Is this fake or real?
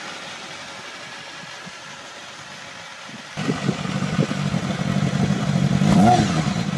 real